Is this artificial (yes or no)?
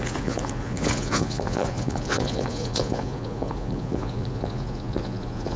yes